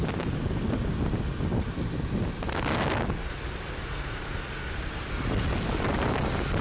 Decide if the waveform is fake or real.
real